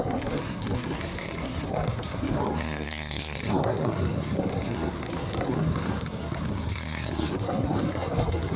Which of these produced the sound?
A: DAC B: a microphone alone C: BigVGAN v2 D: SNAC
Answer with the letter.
D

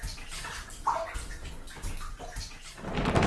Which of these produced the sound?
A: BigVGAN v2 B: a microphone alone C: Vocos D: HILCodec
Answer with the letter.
B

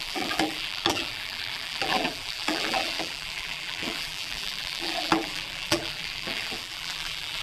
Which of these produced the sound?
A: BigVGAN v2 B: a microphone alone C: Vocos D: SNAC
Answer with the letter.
A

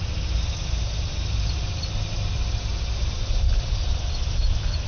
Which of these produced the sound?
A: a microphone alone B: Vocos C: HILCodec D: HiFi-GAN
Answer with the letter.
A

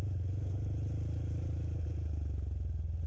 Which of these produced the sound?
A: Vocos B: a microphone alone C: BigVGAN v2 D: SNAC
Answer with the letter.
B